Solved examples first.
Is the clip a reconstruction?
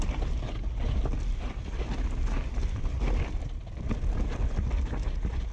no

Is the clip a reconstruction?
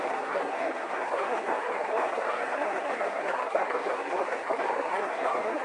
yes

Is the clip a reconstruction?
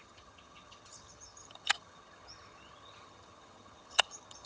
yes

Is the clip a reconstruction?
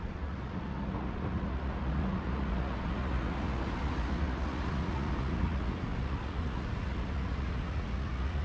yes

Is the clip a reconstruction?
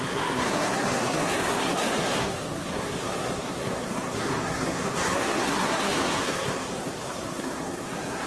yes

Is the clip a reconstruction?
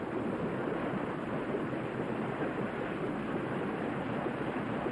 no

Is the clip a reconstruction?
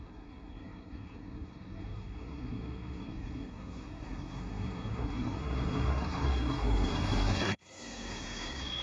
yes